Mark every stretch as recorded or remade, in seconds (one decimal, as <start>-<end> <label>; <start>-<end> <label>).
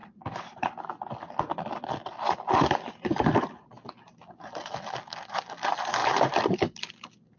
0.0-0.8 remade; 0.8-6.0 recorded; 6.0-6.8 remade; 6.8-7.4 recorded